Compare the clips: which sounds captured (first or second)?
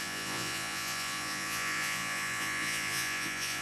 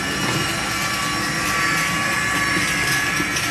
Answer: second